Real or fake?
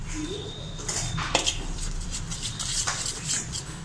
fake